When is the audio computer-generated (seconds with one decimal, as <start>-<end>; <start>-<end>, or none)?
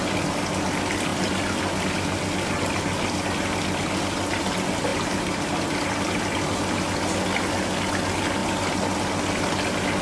none